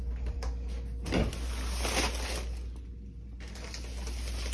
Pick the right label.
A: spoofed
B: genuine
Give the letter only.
B